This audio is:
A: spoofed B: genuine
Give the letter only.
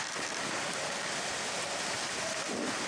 B